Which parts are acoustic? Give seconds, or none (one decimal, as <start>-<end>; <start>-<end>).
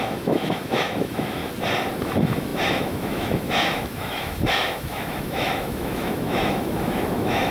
1.4-2.0